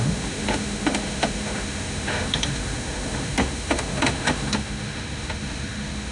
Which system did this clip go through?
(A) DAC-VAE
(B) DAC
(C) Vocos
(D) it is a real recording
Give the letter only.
A